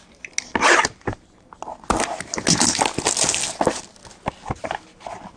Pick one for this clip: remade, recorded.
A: recorded